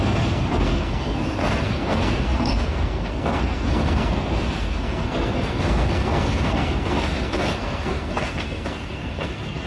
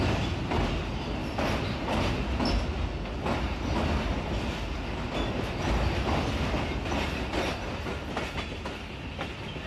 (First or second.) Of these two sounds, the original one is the second